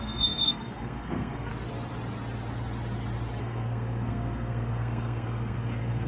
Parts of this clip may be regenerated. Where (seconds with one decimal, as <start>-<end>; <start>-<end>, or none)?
0.0-1.5; 3.4-6.1

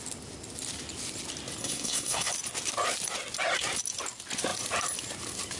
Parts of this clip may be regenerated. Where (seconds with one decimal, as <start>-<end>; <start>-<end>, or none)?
1.6-2.3

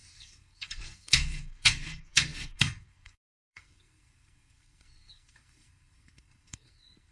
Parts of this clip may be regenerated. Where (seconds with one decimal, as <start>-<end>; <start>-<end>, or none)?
0.0-7.1

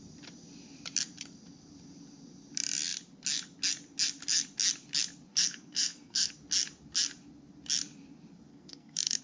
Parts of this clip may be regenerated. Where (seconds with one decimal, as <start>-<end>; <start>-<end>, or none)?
5.3-6.3; 8.5-9.2